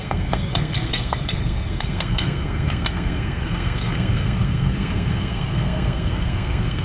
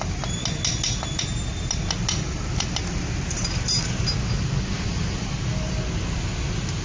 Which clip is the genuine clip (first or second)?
second